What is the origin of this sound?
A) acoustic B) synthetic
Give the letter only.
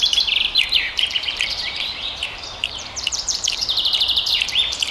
B